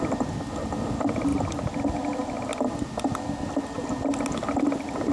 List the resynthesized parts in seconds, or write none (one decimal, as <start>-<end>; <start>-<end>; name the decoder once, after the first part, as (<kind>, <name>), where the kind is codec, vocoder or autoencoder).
none